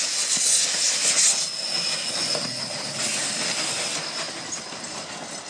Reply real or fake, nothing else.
real